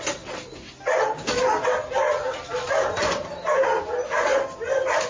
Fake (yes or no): no